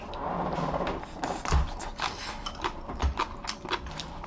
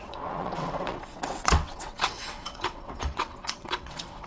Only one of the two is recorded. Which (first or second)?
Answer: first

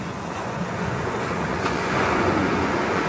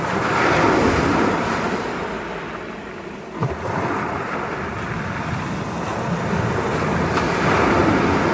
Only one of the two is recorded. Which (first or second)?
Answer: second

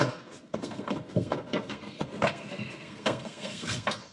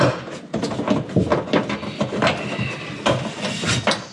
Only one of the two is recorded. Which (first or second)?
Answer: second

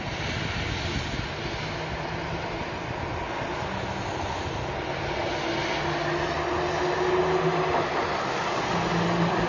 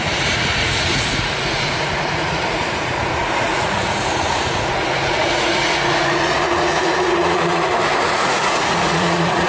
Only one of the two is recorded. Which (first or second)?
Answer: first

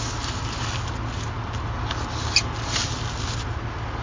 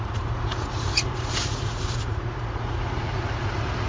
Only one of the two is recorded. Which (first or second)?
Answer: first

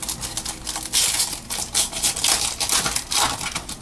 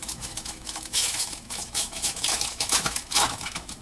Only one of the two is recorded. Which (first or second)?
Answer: first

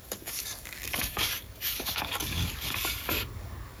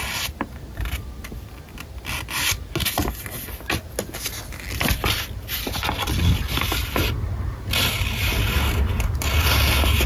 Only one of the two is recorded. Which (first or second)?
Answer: second